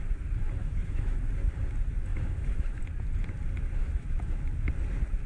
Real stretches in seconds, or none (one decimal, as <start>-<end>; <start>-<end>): 0.0-0.6; 1.2-2.1; 2.8-3.8; 4.4-5.3